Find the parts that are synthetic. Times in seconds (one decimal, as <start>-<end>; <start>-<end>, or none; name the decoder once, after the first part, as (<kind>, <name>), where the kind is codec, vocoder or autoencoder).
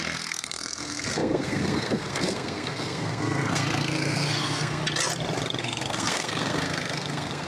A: 0.0-4.8 (codec, SNAC); 5.6-7.5